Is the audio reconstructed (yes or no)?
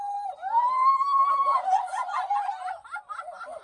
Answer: no